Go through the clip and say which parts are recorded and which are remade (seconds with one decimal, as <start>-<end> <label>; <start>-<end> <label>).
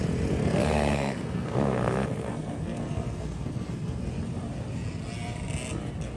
0.0-0.4 recorded; 0.4-4.0 remade; 4.0-6.2 recorded